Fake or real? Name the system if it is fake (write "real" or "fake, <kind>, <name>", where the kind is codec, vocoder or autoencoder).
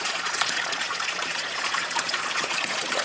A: fake, vocoder, Vocos